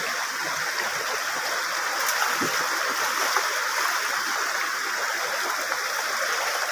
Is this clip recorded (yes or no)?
yes